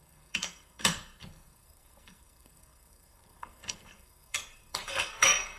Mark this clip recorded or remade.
remade